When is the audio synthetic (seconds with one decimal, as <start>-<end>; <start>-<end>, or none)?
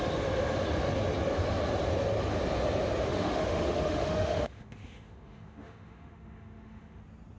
3.1-7.0